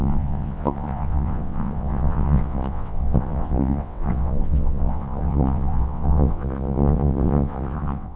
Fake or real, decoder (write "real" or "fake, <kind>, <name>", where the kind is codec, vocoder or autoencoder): fake, vocoder, WaveNeXt